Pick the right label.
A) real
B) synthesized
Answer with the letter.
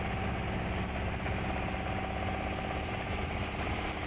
A